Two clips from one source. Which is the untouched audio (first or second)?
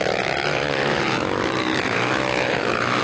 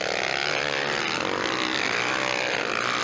second